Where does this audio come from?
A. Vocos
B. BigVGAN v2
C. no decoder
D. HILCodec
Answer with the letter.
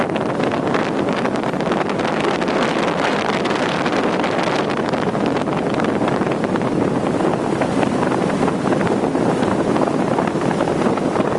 B